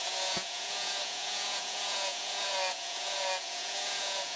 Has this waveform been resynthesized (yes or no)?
yes